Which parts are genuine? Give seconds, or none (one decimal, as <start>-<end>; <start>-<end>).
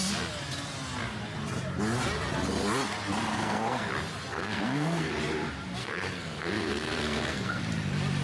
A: 0.0-3.3; 3.9-4.3; 5.1-5.8; 7.6-8.2